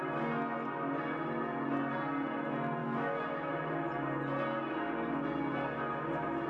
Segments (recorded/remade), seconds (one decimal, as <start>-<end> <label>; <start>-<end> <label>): 0.0-2.8 recorded; 2.8-3.5 remade; 3.5-6.5 recorded